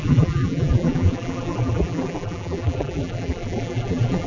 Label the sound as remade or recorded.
remade